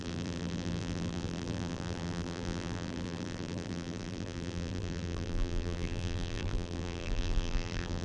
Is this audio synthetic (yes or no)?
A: yes